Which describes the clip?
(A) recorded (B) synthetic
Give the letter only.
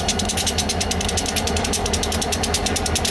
A